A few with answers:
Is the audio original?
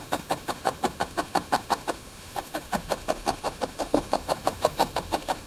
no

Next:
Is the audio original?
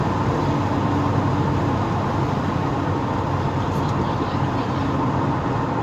yes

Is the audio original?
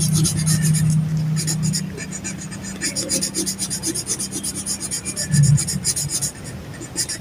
yes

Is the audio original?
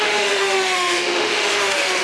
no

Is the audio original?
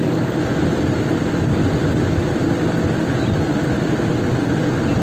yes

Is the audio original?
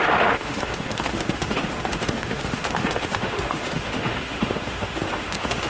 no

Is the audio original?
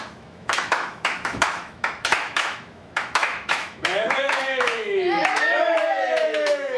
no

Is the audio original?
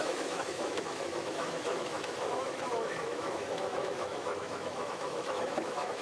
no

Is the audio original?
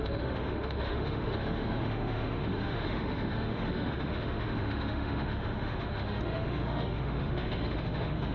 no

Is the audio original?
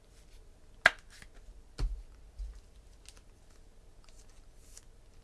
yes